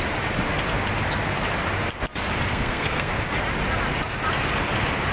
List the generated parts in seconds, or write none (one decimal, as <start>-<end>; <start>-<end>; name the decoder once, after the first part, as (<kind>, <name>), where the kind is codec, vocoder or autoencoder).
2.5-3.1 (codec, SNAC)